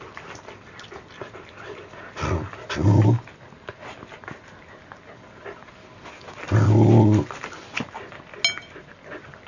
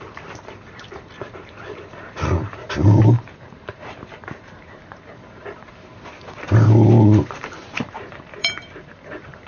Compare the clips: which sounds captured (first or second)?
first